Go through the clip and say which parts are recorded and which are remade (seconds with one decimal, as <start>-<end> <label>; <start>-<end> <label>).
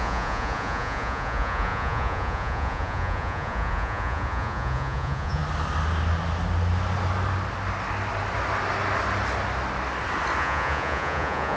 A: 0.0-5.4 remade; 5.4-10.4 recorded; 10.4-11.6 remade